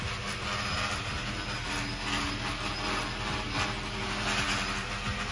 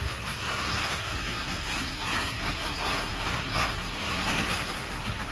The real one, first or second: first